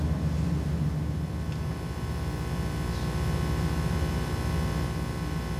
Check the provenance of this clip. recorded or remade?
recorded